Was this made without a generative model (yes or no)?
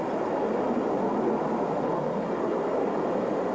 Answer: yes